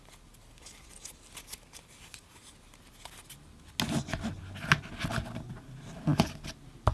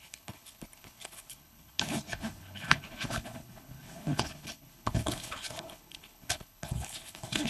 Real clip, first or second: first